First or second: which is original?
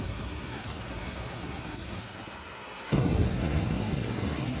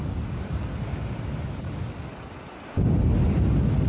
second